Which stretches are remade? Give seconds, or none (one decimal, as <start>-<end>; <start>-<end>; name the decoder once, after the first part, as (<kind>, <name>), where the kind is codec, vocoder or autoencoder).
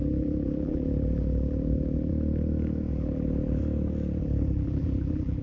0.0-2.1 (vocoder, BigVGAN v2); 2.9-3.6; 4.2-5.4